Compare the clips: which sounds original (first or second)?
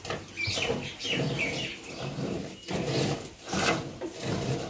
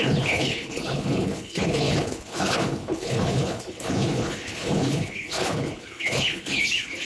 first